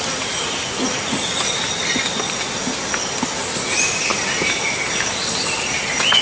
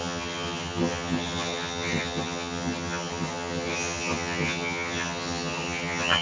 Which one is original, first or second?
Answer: first